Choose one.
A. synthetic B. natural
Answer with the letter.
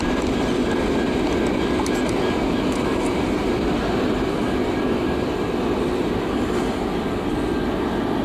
B